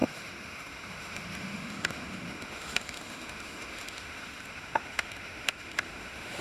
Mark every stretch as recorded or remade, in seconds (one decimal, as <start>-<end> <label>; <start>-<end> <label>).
0.0-6.4 remade